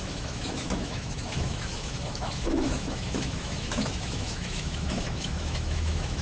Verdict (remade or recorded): remade